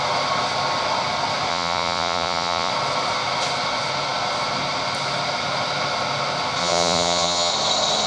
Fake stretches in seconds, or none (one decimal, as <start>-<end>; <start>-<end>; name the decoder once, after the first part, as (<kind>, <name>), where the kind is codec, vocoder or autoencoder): 1.5-2.7 (vocoder, Vocos); 6.6-7.5

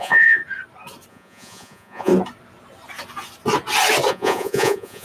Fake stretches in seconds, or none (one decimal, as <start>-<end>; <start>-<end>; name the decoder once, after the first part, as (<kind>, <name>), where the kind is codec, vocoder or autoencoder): 0.0-0.4 (vocoder, Vocos); 1.1-2.1; 4.1-5.0

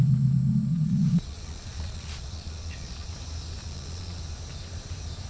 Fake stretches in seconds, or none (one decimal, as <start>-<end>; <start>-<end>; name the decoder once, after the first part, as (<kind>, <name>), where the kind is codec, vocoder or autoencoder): 0.7-3.1 (vocoder, Vocos); 3.6-4.2

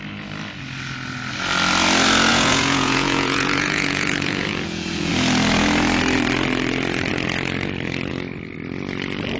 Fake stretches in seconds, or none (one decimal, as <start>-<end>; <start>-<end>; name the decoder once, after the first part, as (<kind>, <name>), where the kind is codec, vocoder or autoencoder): 2.3-5.1 (vocoder, Vocos)

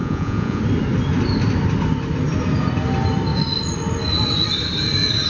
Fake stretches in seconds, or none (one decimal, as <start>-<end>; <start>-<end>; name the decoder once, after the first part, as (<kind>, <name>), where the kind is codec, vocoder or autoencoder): 0.0-0.6 (vocoder, Vocos)

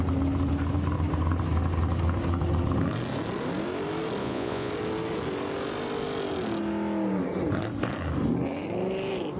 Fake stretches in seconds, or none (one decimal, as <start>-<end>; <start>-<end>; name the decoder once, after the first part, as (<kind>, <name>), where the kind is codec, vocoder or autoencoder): 4.2-4.7 (vocoder, Vocos)

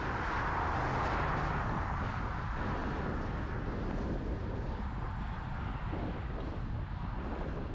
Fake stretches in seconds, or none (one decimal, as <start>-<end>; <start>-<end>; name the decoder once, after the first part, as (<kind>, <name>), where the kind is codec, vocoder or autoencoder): none

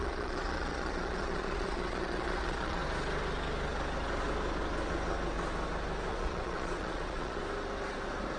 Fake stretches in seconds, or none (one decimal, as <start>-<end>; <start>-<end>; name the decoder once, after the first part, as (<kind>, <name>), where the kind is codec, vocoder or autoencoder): 0.0-2.8 (vocoder, Vocos); 6.1-7.4